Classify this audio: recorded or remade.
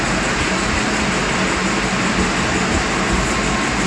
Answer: recorded